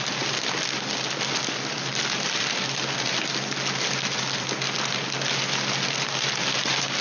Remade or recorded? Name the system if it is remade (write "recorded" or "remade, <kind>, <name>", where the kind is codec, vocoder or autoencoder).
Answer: recorded